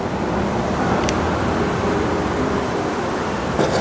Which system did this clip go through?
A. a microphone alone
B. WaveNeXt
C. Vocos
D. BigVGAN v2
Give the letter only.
D